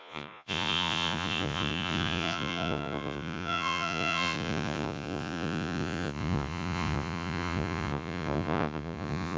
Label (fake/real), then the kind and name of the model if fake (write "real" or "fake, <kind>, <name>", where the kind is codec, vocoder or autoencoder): fake, vocoder, Vocos